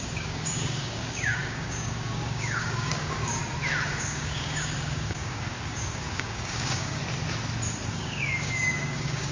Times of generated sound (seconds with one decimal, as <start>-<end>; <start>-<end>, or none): 0.0-3.4; 3.9-7.0; 7.9-9.3